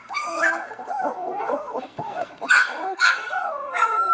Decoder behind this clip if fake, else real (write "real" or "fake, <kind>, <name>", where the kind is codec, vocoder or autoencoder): fake, codec, SNAC